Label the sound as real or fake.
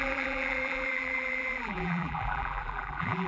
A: fake